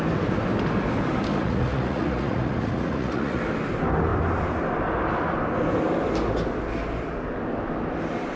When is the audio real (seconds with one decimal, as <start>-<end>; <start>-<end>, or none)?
0.0-1.3; 3.4-8.4

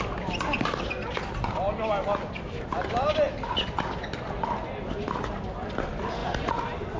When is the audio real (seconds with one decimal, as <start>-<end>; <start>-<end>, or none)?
0.0-7.0

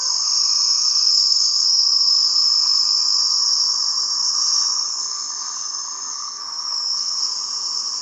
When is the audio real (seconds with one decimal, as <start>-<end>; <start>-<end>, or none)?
0.0-0.9; 2.1-4.9; 7.2-8.0